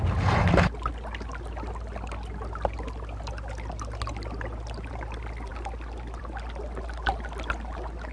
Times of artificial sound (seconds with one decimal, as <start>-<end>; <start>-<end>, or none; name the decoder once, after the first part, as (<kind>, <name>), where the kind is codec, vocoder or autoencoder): none